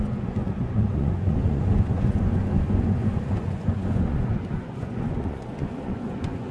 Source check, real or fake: fake